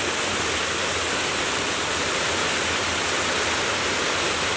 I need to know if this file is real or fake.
real